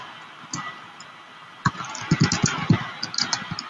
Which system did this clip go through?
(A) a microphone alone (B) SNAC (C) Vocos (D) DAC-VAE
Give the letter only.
A